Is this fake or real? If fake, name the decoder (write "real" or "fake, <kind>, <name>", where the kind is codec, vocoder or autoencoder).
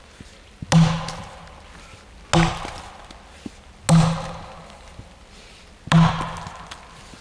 real